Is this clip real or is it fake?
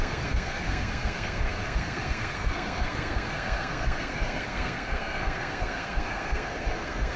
fake